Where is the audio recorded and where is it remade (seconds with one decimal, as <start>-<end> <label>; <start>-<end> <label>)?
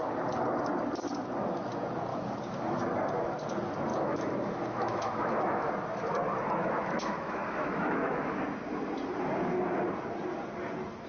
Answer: 0.0-2.1 recorded; 2.1-2.8 remade; 2.8-3.9 recorded; 3.9-5.7 remade; 5.7-6.6 recorded; 6.6-8.4 remade; 8.4-11.1 recorded